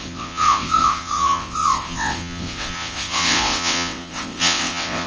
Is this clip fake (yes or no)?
yes